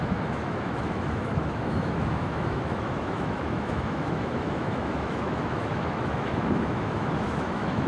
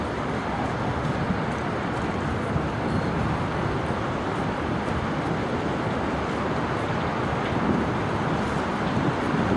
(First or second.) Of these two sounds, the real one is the second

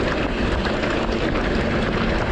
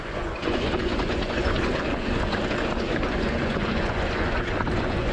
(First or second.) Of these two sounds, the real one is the first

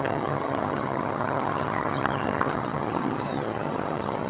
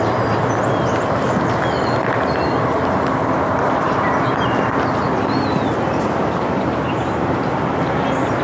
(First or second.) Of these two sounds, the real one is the second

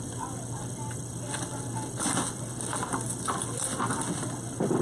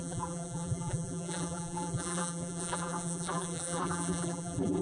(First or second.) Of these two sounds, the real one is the first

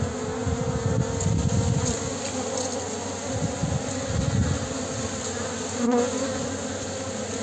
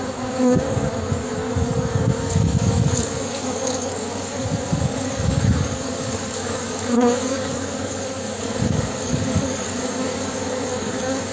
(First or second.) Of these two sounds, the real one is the first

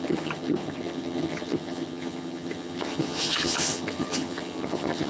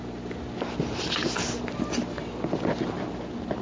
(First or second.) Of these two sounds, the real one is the second